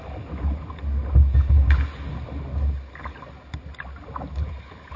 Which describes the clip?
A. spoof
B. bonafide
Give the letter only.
B